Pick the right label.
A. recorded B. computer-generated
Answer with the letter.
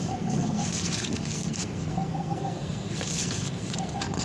B